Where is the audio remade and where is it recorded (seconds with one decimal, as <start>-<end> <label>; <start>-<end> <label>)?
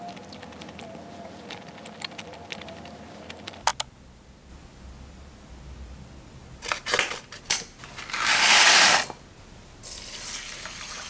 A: 0.0-11.1 recorded